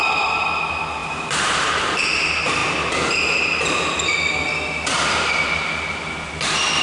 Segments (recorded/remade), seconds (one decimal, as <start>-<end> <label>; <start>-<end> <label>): 0.0-1.0 recorded; 1.0-1.7 remade; 1.7-6.8 recorded